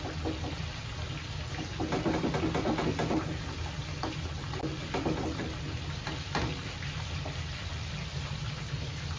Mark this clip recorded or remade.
recorded